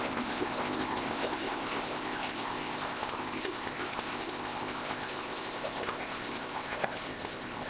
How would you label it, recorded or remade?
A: remade